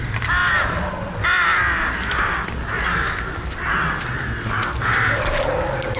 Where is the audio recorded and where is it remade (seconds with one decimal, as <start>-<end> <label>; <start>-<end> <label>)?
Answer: 0.0-6.0 recorded